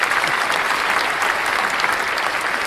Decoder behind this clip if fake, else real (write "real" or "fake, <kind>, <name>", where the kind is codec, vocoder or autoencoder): real